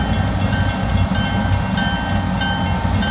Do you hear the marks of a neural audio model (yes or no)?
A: no